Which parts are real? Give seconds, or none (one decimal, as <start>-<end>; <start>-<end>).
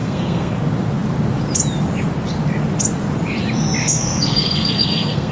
0.5-3.8